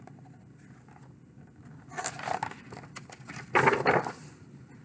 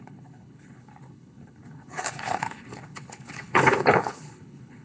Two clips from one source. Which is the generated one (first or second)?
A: second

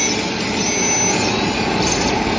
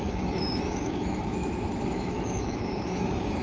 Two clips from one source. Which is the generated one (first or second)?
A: second